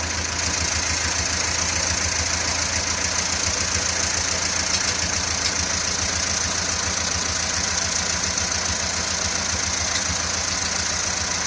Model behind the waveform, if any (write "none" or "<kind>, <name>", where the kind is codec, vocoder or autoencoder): none